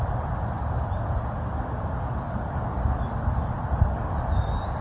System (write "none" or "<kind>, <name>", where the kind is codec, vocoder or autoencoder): none